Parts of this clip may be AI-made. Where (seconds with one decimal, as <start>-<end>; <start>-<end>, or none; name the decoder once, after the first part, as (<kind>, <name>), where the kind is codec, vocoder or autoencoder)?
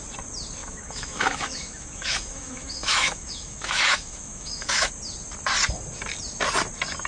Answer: 0.6-4.9 (autoencoder, DAC-VAE)